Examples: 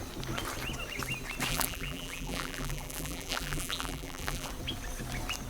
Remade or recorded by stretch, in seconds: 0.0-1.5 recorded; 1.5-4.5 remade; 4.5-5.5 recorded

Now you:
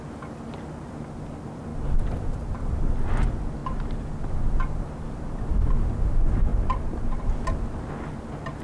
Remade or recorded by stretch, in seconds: 0.0-1.7 recorded; 1.7-3.0 remade; 3.0-6.5 recorded; 6.5-7.3 remade; 7.3-8.6 recorded

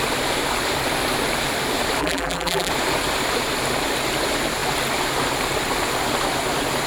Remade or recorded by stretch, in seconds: 0.0-2.0 recorded; 2.0-2.7 remade; 2.7-6.9 recorded

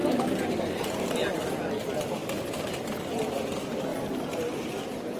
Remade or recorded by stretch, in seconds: 0.0-1.1 remade; 1.1-2.2 recorded; 2.2-2.8 remade; 2.8-3.9 recorded; 3.9-4.6 remade; 4.6-5.2 recorded

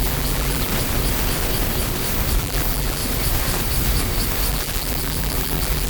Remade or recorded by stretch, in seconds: 0.0-0.7 remade; 0.7-2.4 recorded; 2.4-3.0 remade; 3.0-4.5 recorded; 4.5-5.9 remade

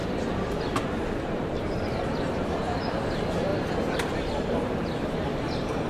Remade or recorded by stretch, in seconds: 0.0-0.8 recorded; 0.8-3.5 remade; 3.5-4.0 recorded; 4.0-5.9 remade

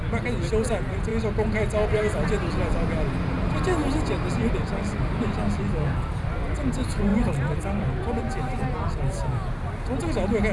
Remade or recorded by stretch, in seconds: 0.0-7.1 recorded; 7.1-8.6 remade; 8.6-10.5 recorded